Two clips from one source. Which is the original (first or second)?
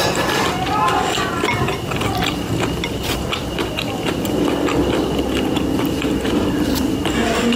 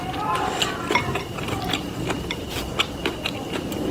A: first